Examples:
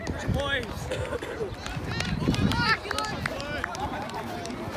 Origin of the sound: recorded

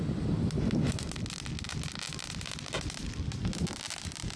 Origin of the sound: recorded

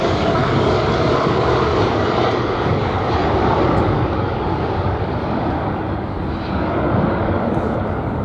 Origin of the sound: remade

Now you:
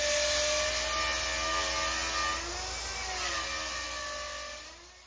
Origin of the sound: recorded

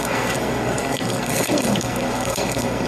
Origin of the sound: remade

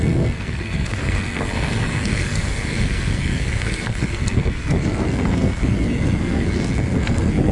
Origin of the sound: remade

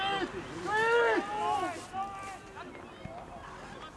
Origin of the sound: recorded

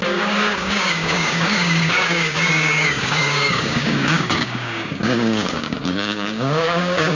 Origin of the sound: remade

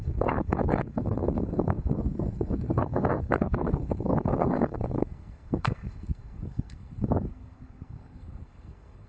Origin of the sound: remade